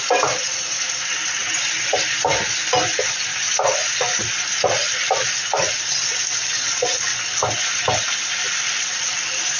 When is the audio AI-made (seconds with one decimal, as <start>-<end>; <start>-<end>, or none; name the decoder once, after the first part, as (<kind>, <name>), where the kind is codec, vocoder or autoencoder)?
none